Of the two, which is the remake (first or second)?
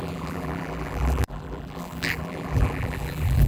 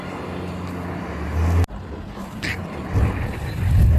first